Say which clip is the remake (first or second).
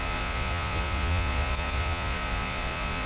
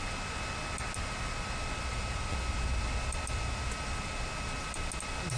first